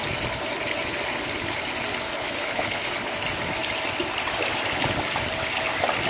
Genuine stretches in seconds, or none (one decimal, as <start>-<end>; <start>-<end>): 0.0-2.1; 2.9-6.1